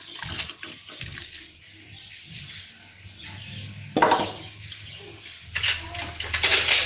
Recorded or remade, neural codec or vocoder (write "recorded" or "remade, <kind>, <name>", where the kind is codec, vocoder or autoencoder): recorded